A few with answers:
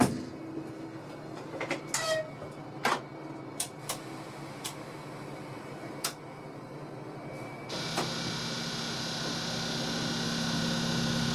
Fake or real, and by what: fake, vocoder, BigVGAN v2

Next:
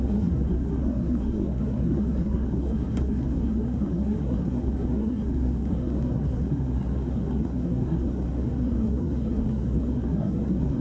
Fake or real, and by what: fake, codec, SNAC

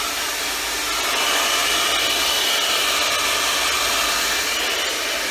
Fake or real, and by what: real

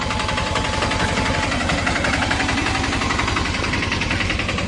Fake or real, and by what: real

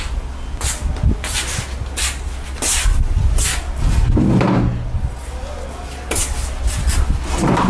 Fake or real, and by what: real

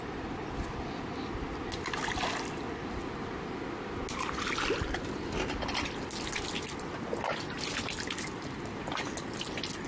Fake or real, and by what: real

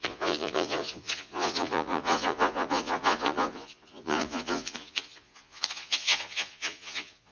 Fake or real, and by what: fake, vocoder, Vocos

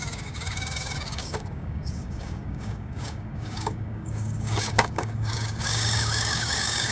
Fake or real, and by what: fake, codec, DAC